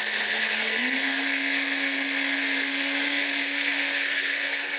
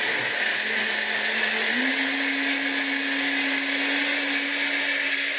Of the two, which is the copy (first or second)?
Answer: first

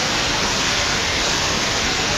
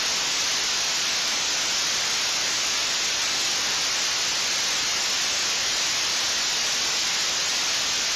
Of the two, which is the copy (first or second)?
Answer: first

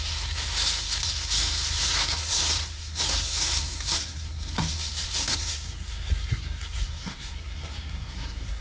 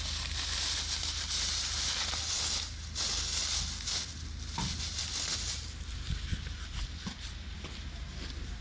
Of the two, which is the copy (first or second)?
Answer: first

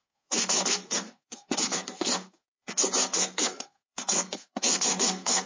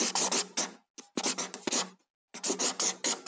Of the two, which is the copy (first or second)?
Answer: first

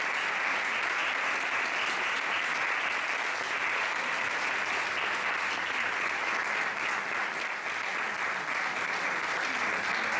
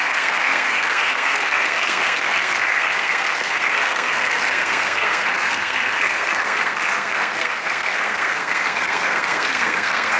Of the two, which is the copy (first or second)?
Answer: second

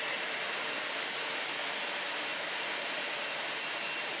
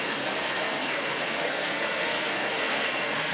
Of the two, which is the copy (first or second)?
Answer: second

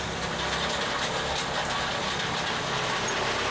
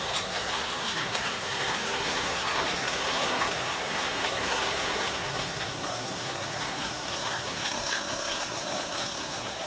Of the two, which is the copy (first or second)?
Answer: second